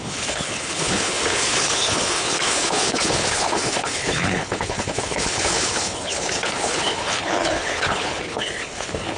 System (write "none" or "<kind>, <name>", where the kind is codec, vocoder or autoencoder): codec, HILCodec